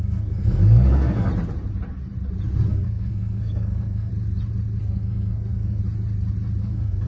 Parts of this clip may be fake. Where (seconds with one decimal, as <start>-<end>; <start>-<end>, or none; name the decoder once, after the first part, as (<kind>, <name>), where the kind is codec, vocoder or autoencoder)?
0.0-1.3 (codec, SNAC); 2.7-4.1; 4.8-5.8; 6.6-7.1